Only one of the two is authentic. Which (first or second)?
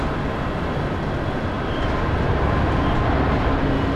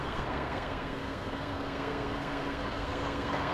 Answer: first